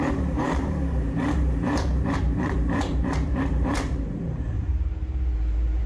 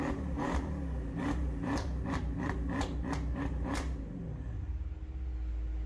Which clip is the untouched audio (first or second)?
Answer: second